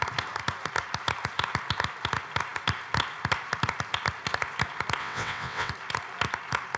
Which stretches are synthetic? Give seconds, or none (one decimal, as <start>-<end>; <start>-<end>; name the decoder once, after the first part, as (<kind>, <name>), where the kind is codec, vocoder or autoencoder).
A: 5.0-5.7 (vocoder, WaveNeXt)